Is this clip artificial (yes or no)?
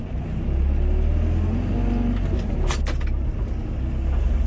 no